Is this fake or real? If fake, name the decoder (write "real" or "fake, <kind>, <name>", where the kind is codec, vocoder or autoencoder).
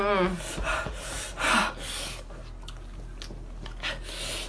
real